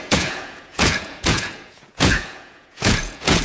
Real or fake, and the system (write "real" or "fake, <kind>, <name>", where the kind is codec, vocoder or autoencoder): fake, vocoder, Vocos